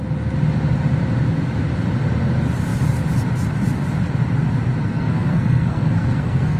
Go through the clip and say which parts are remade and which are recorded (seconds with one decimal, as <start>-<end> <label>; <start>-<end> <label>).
0.0-4.8 recorded; 4.8-6.6 remade